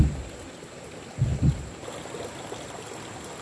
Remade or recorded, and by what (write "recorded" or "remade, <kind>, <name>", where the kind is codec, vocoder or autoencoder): recorded